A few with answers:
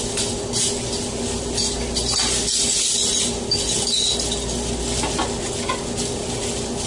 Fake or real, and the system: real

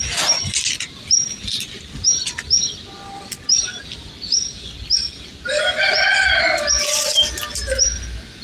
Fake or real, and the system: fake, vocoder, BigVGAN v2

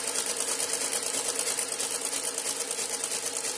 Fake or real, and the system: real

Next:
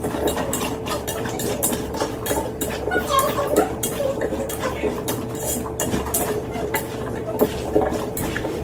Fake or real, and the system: real